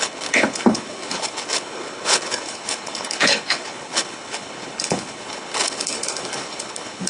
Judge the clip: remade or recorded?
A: remade